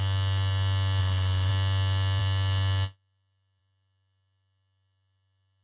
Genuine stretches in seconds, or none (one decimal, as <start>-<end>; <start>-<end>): 0.0-1.0; 1.5-5.6